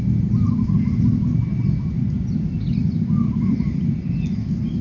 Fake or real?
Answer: real